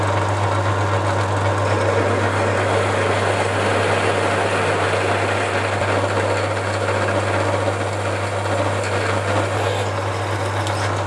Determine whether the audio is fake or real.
real